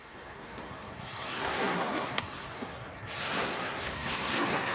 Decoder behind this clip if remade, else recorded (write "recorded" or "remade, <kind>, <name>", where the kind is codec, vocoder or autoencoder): remade, codec, SNAC